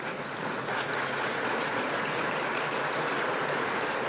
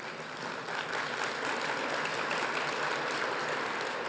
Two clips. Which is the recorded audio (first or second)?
second